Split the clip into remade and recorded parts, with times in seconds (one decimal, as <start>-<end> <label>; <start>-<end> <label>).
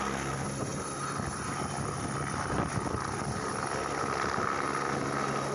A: 0.0-5.5 recorded